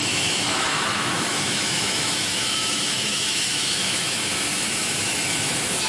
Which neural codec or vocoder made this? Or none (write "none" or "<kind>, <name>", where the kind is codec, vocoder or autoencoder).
autoencoder, DAC-VAE